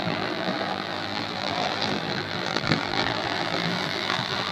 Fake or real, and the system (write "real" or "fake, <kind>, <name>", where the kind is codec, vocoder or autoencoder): fake, vocoder, BigVGAN v2